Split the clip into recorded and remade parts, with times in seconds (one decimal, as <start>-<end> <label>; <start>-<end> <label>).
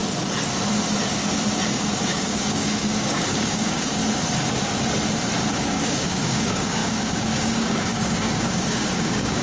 0.0-2.1 recorded; 2.1-4.0 remade; 4.0-5.5 recorded; 5.5-9.4 remade